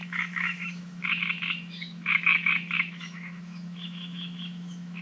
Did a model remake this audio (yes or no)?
yes